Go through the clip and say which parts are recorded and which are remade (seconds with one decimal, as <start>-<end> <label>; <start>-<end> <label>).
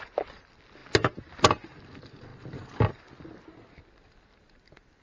0.0-5.0 recorded